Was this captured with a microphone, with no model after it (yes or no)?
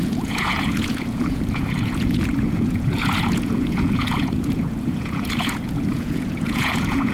no